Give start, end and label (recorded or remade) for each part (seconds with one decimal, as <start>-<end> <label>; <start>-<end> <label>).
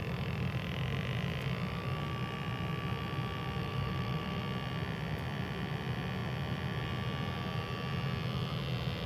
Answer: 0.0-3.6 recorded; 3.6-4.4 remade; 4.4-9.1 recorded